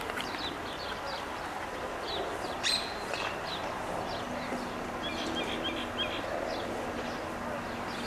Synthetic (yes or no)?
no